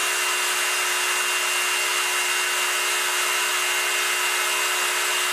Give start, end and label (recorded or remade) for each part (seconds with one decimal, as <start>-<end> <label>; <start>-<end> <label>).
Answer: 0.0-5.3 recorded